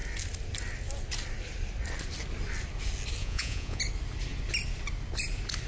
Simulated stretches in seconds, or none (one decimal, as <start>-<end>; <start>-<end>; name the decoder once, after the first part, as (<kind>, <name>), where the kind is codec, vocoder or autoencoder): 3.2-3.8 (vocoder, Vocos)